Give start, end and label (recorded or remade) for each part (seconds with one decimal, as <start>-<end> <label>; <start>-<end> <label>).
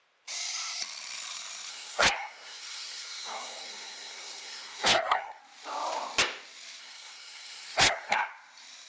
0.0-1.7 recorded; 1.7-5.4 remade; 5.4-6.8 recorded; 6.8-8.3 remade; 8.3-8.9 recorded